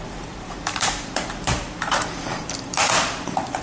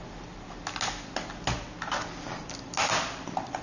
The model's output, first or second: first